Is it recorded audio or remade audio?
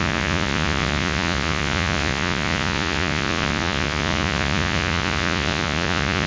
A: remade